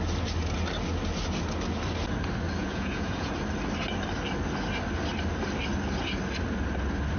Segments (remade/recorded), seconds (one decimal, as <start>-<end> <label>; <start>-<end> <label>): 0.0-2.6 recorded; 2.6-3.3 remade; 3.3-7.2 recorded